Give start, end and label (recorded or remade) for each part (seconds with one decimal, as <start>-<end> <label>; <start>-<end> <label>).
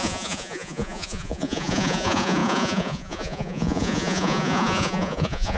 0.0-5.6 remade